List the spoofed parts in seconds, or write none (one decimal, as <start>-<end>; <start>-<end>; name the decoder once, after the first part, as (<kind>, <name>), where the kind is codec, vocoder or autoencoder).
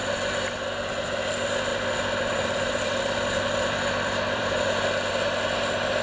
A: 1.7-4.6 (vocoder, BigVGAN v2)